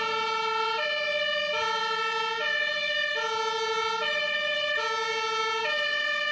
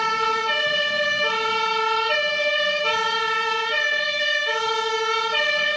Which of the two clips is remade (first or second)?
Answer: second